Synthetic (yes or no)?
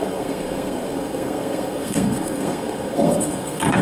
yes